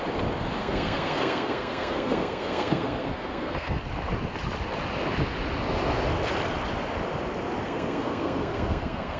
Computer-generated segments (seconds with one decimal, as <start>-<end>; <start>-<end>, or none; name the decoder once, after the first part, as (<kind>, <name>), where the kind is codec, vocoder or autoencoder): 0.6-3.8 (codec, SNAC); 7.6-9.2